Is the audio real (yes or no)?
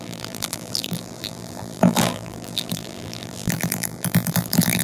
no